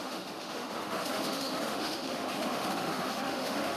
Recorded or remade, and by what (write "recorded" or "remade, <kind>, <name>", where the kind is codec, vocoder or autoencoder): remade, autoencoder, DAC-VAE